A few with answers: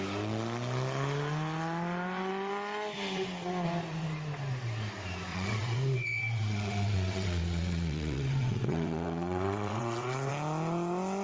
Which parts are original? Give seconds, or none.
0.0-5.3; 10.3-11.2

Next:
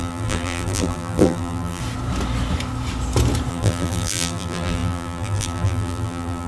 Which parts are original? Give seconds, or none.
1.8-3.5

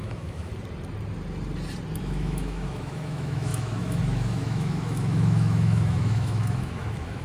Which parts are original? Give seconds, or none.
0.5-2.0

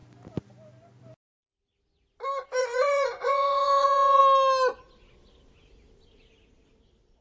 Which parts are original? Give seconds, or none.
0.0-2.6; 4.2-7.2

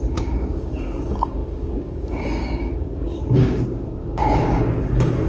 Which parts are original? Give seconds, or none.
none